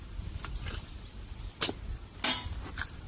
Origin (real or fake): real